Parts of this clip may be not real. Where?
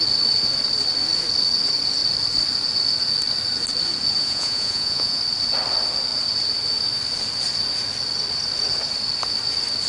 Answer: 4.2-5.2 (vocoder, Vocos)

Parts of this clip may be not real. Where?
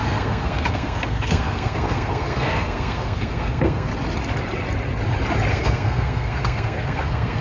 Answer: 0.0-3.9 (codec, SNAC); 5.5-7.4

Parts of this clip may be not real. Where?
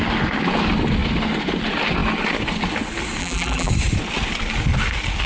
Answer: 3.2-3.7 (vocoder, BigVGAN v2)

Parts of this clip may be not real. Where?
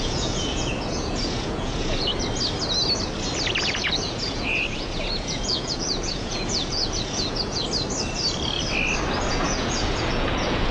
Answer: 0.0-2.1 (vocoder, Vocos); 3.6-7.6; 9.3-10.7